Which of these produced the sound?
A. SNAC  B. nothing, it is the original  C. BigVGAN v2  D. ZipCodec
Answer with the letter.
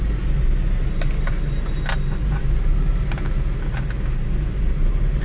B